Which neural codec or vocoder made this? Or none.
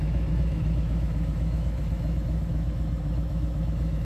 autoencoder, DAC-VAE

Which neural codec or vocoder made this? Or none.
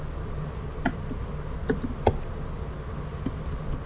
none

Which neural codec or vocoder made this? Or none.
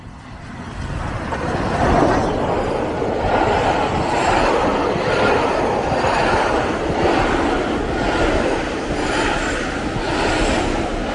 none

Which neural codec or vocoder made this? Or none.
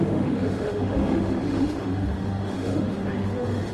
autoencoder, DAC-VAE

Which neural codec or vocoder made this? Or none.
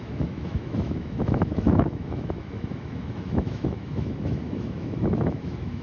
autoencoder, DAC-VAE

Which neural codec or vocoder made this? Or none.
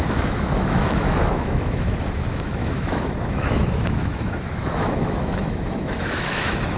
autoencoder, DAC-VAE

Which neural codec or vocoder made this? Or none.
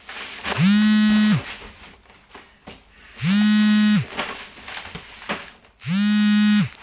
none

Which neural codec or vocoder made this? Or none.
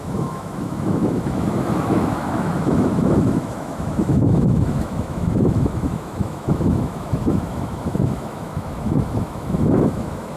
autoencoder, DAC-VAE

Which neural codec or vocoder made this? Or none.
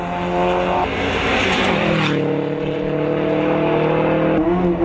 none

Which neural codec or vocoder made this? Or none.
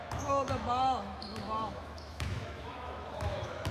autoencoder, DAC-VAE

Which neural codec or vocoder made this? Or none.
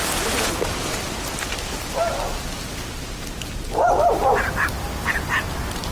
none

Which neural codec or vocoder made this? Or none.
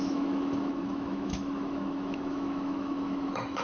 autoencoder, DAC-VAE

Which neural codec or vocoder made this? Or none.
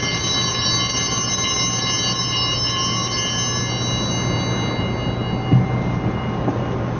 none